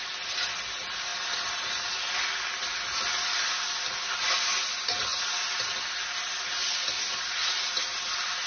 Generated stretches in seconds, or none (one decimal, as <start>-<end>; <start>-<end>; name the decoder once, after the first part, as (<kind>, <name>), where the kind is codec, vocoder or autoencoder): none